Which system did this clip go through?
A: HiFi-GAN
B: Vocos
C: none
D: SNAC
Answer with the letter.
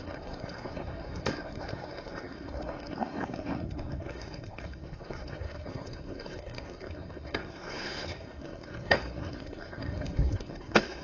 D